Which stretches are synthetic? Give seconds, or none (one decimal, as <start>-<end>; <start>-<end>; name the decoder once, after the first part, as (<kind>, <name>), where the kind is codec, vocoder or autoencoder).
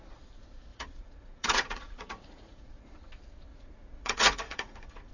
0.7-2.7 (vocoder, Vocos); 3.5-5.1